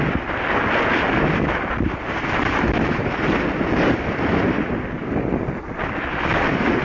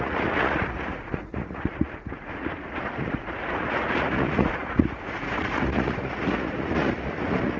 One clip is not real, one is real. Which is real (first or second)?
first